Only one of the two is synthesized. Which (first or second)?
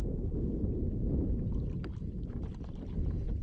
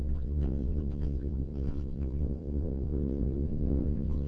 second